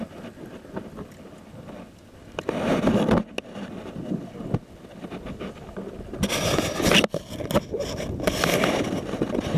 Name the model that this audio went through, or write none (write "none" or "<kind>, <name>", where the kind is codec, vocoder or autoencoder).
none